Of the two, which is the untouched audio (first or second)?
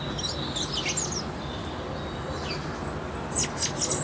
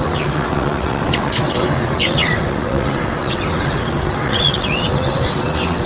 first